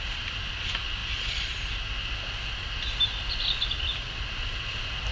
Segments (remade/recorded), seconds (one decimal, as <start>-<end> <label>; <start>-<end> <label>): 0.0-5.1 recorded